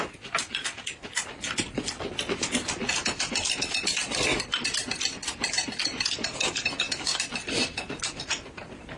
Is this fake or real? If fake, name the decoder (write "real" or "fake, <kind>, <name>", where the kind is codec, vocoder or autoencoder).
real